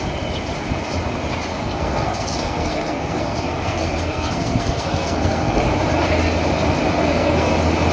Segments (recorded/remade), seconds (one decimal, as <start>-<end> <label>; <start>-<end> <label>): 0.0-1.5 recorded; 1.5-5.6 remade; 5.6-7.0 recorded; 7.0-7.5 remade; 7.5-7.9 recorded